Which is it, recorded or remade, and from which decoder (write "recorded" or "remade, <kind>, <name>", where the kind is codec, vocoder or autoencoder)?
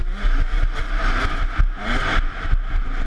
recorded